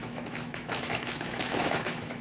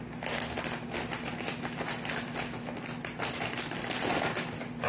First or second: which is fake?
first